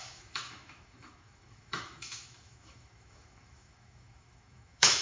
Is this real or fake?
fake